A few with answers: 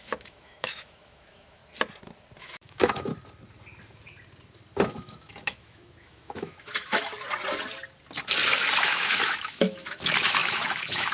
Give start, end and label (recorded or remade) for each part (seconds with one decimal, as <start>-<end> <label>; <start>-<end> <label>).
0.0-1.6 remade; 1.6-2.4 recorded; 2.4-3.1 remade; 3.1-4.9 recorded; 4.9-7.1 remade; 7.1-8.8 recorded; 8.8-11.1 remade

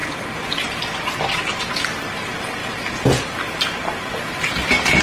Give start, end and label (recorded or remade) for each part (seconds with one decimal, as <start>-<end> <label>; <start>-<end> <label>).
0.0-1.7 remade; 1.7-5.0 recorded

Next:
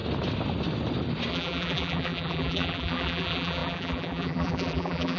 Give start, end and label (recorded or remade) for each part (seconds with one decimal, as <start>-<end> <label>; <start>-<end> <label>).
0.0-1.3 recorded; 1.3-5.2 remade

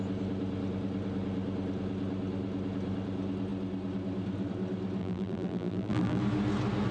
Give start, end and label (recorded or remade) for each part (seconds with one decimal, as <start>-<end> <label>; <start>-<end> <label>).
0.0-5.0 recorded; 5.0-6.2 remade; 6.2-6.9 recorded